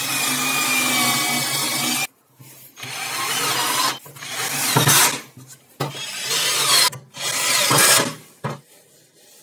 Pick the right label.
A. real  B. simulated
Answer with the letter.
A